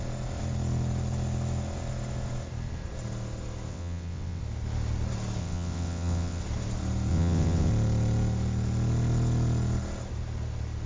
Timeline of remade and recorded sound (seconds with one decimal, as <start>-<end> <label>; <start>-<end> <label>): 0.0-3.7 recorded; 3.7-4.4 remade; 4.4-5.4 recorded; 5.4-6.4 remade; 6.4-7.1 recorded; 7.1-7.7 remade; 7.7-10.9 recorded